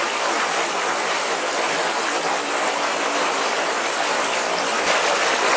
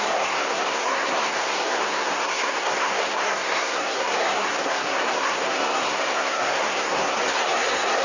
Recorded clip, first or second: first